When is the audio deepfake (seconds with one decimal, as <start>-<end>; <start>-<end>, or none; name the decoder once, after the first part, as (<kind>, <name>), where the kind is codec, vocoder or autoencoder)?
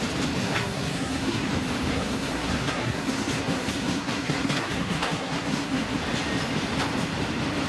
0.4-1.5 (codec, SNAC); 1.9-6.0